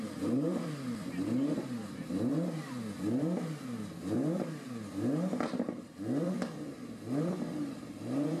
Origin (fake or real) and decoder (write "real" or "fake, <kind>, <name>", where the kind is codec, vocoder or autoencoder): fake, vocoder, BigVGAN v2